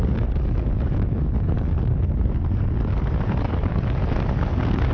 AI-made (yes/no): yes